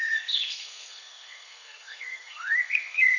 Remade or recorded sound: remade